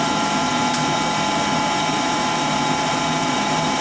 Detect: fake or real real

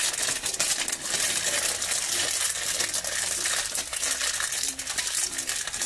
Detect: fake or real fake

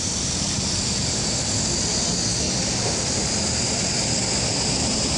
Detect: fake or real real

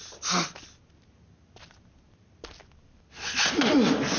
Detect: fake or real real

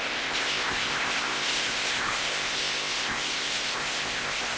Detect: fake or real fake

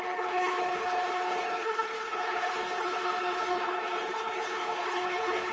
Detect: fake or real fake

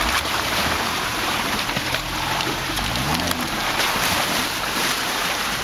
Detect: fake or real fake